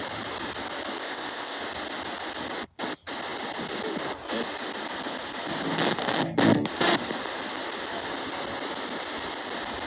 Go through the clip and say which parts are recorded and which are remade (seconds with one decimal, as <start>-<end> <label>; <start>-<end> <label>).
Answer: 0.0-1.0 recorded; 1.0-1.6 remade; 1.6-9.9 recorded